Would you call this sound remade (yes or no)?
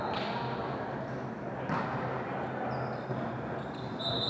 no